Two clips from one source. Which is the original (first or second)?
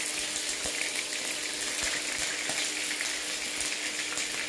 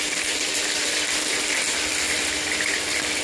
first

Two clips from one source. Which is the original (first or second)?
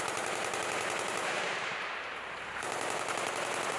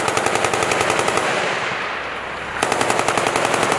second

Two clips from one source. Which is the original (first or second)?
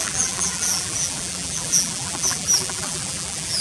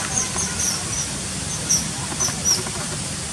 second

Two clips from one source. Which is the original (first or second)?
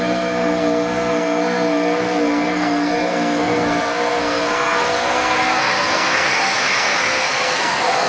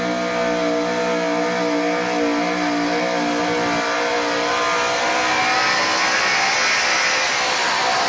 second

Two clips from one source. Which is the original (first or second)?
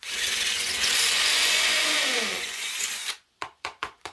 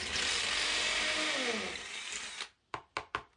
second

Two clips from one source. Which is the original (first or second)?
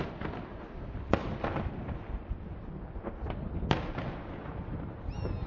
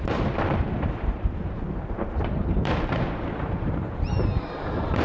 first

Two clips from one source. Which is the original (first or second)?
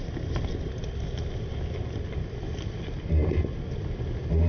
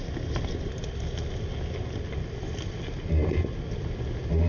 second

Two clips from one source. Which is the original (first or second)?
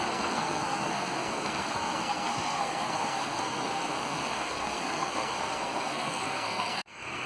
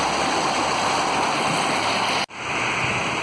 second